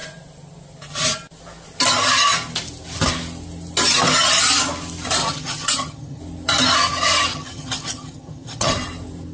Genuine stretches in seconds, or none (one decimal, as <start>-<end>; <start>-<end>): 0.0-5.2; 6.2-7.3; 8.7-9.3

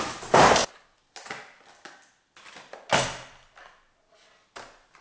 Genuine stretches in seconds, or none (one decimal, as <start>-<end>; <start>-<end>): 0.0-5.0